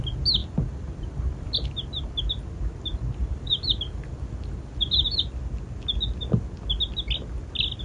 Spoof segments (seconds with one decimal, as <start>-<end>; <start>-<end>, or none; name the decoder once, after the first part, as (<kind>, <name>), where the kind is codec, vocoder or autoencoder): 0.4-2.2 (vocoder, BigVGAN v2); 3.2-4.9